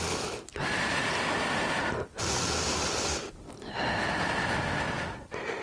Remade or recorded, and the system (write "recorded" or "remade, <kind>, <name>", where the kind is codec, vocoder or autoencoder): recorded